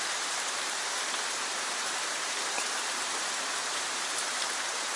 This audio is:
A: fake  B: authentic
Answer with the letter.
A